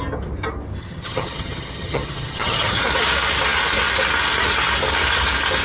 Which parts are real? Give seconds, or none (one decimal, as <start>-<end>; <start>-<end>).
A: 0.0-0.8; 2.8-5.6